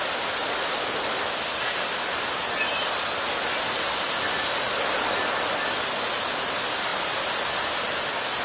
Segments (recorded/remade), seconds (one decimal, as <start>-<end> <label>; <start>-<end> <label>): 0.0-8.4 recorded